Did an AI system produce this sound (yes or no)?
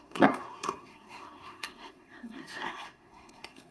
yes